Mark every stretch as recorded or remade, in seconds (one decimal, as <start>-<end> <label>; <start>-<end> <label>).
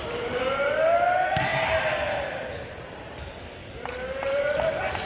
0.0-1.5 remade; 1.5-2.5 recorded; 2.5-5.1 remade